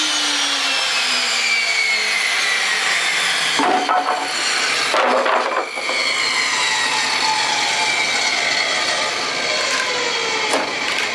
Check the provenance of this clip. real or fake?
real